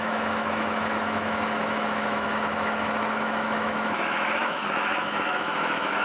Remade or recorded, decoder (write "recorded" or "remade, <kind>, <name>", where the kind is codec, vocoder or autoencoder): remade, autoencoder, DAC-VAE